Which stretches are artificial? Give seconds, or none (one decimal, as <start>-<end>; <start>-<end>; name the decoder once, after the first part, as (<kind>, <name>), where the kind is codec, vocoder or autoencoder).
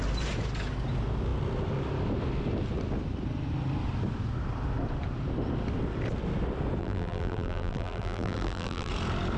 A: 6.8-8.9 (vocoder, BigVGAN v2)